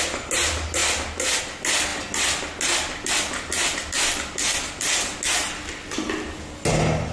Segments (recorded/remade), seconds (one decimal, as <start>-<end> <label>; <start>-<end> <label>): 0.0-7.1 recorded